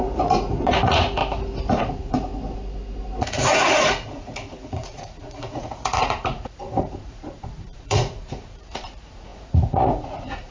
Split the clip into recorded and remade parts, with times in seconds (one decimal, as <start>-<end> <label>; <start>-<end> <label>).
0.0-1.2 remade; 1.2-1.7 recorded; 1.7-2.3 remade; 2.3-3.2 recorded; 3.2-10.5 remade